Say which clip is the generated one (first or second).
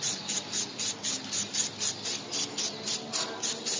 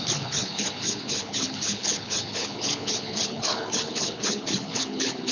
second